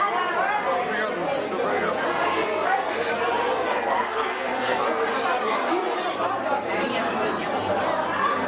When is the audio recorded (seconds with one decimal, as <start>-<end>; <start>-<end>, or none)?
0.0-1.7; 3.1-3.7; 5.0-8.5